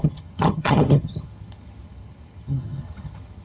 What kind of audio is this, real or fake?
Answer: fake